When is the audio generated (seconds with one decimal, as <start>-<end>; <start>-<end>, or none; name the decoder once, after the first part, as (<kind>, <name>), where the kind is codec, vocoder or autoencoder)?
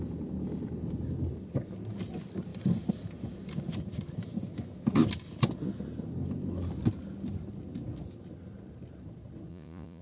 9.5-10.0 (vocoder, Vocos)